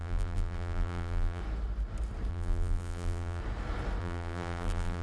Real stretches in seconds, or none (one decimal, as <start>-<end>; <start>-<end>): 1.4-2.3; 3.4-4.0